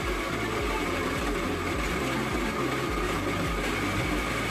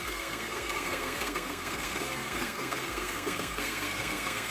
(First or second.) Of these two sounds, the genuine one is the first